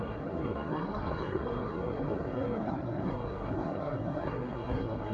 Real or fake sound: fake